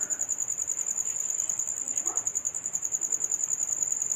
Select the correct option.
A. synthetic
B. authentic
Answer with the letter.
A